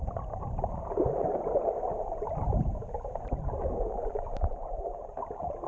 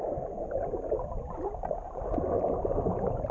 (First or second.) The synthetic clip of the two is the first